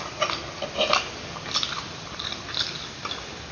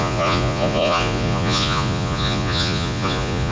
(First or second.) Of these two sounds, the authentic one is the first